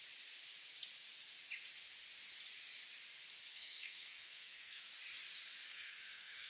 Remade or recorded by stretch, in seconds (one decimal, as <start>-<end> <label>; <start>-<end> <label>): 0.0-3.5 recorded; 3.5-4.8 remade; 4.8-5.7 recorded; 5.7-6.5 remade